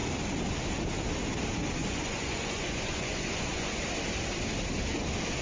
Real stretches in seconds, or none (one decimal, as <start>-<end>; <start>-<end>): 0.0-1.8; 3.8-5.4